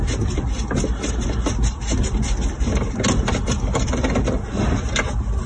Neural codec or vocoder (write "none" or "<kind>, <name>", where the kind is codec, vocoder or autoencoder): none